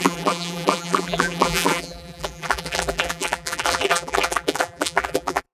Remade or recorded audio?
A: remade